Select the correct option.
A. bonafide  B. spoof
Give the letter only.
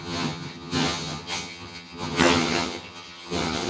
B